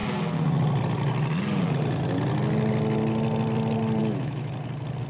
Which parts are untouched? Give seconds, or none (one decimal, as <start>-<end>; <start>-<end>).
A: 0.0-4.0; 4.5-5.1